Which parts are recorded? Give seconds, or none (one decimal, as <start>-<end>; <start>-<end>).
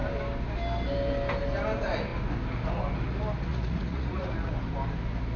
0.0-3.5; 4.5-5.4